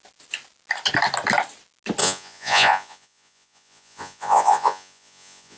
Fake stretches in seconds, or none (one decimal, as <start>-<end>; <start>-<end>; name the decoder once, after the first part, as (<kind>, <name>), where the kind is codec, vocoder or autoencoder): 2.0-5.6 (vocoder, Vocos)